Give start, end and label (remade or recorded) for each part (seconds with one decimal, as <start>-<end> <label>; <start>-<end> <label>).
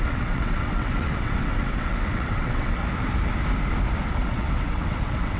0.0-2.8 remade; 2.8-4.1 recorded; 4.1-5.4 remade